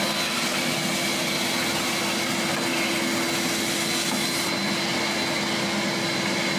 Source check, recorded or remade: recorded